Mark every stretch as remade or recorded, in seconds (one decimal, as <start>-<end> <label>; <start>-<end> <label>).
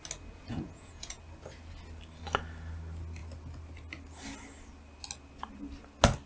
0.0-0.5 recorded; 0.5-1.2 remade; 1.2-6.3 recorded